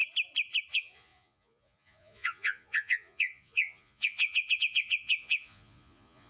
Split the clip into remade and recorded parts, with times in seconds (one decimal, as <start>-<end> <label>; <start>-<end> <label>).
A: 0.0-0.7 recorded; 0.7-6.3 remade